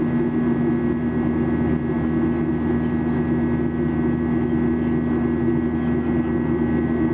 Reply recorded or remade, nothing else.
recorded